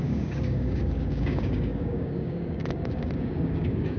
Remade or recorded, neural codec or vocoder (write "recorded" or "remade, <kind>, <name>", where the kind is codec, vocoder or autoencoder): remade, codec, DAC